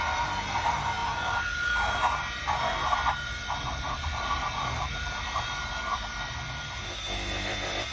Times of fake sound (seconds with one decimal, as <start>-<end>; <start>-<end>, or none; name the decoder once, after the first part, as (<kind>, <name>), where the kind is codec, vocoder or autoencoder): 0.0-7.9 (vocoder, BigVGAN v2)